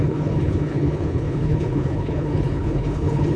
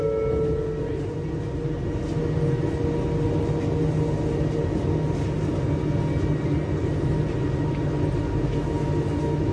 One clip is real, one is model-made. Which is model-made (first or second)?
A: first